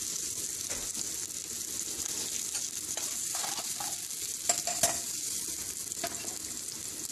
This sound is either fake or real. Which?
real